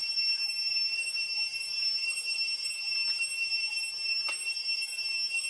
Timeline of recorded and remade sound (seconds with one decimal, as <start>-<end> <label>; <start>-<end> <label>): 0.0-5.5 recorded